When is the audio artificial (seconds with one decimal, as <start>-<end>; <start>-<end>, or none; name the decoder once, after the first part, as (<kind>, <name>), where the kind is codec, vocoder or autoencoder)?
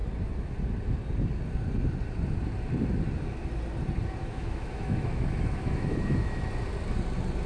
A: 4.2-6.4 (autoencoder, DAC-VAE)